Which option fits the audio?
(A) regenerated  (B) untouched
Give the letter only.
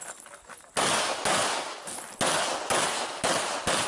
B